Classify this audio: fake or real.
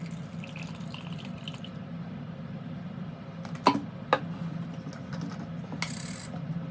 real